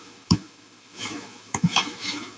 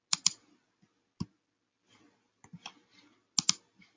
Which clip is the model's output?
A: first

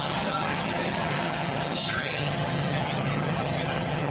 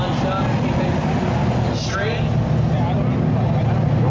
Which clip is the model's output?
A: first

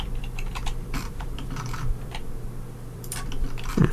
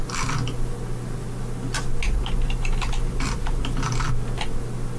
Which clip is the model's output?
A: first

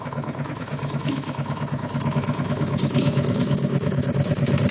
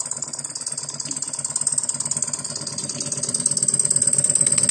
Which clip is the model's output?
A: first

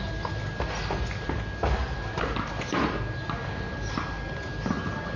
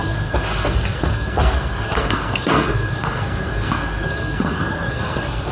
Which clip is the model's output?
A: second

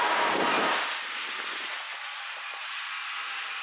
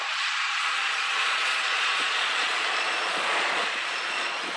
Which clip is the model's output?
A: second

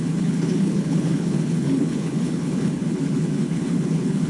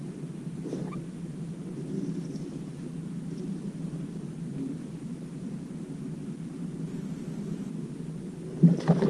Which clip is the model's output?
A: first